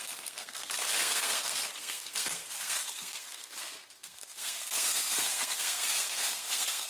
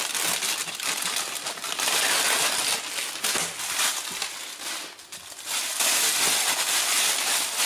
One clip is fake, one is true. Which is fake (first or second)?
first